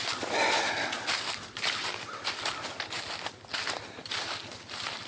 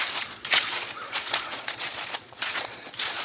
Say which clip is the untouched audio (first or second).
first